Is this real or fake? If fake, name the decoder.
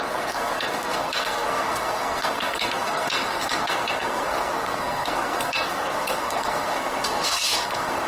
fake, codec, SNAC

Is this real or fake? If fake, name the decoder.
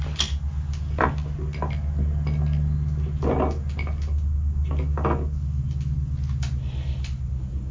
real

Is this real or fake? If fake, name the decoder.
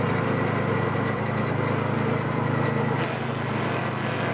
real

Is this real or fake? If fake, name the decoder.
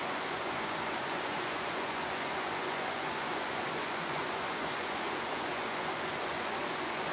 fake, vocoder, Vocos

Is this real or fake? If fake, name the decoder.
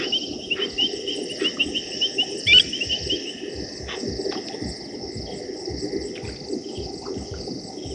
real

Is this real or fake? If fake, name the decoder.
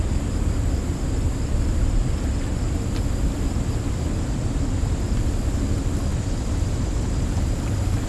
real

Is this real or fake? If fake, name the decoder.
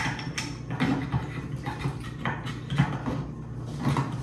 real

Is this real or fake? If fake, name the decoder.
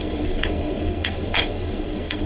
fake, codec, SNAC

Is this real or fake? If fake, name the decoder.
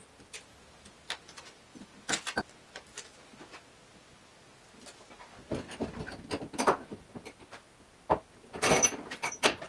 real